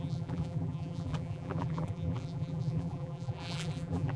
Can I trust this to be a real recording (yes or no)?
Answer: no